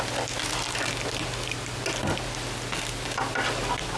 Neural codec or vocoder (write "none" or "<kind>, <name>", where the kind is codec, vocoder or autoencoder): none